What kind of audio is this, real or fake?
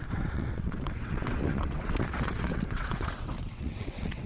fake